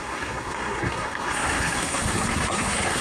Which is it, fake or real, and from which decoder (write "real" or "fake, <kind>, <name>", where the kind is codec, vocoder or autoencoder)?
fake, codec, SNAC